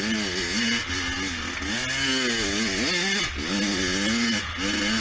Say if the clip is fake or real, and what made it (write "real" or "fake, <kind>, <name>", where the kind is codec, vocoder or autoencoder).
real